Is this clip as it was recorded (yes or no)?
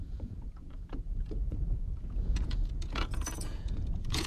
no